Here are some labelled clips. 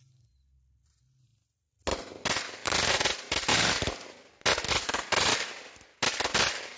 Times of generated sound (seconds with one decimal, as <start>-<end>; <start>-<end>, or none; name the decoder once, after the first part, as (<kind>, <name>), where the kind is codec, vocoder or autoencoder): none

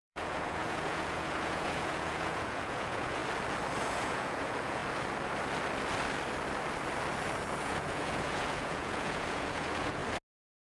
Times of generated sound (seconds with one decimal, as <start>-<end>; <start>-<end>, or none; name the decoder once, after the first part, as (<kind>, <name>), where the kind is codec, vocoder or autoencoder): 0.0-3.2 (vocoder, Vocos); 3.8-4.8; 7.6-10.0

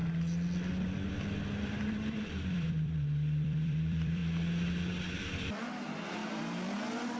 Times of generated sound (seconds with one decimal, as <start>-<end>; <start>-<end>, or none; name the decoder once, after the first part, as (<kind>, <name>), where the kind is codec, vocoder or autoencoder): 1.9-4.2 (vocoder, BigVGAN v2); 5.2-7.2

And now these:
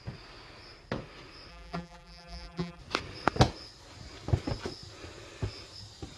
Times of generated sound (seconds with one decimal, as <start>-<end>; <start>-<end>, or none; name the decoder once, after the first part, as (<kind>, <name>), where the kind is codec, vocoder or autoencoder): 1.5-2.8 (vocoder, BigVGAN v2)